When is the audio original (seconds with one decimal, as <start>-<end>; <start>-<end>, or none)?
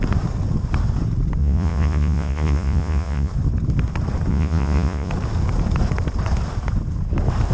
0.0-1.4; 3.3-4.3; 5.1-7.5